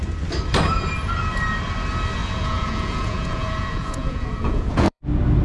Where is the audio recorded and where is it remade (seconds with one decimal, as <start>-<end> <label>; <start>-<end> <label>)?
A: 0.0-2.2 recorded; 2.2-5.0 remade; 5.0-5.4 recorded